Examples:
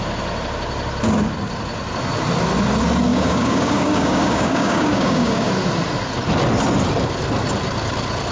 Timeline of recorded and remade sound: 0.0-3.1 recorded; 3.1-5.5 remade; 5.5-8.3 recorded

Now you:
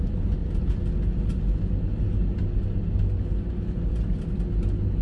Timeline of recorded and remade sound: 0.0-5.0 recorded

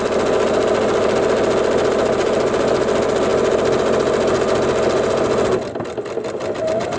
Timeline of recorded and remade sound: 0.0-7.0 recorded

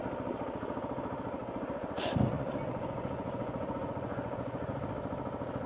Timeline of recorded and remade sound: 0.0-1.4 recorded; 1.4-4.8 remade; 4.8-5.7 recorded

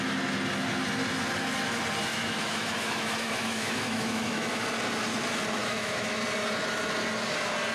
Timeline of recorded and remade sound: 0.0-2.1 recorded; 2.1-4.6 remade; 4.6-5.6 recorded; 5.6-6.2 remade; 6.2-7.7 recorded